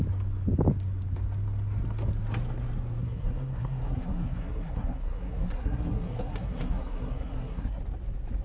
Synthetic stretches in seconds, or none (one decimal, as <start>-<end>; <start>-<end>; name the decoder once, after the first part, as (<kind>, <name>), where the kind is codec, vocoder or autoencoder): 3.0-7.8 (codec, SNAC)